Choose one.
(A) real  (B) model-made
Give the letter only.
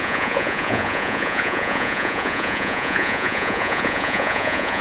B